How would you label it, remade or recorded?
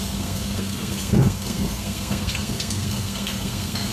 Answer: remade